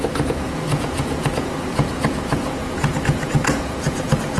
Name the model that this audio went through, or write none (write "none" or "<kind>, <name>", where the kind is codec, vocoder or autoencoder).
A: vocoder, Vocos